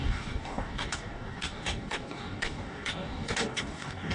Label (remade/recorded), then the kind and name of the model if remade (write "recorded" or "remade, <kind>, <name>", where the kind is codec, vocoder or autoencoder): remade, codec, DAC